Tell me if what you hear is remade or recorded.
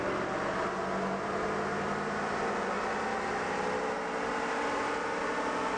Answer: recorded